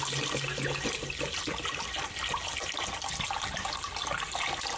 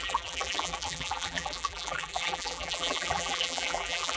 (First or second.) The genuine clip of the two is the first